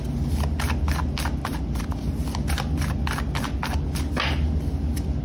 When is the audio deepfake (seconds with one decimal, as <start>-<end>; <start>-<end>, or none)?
none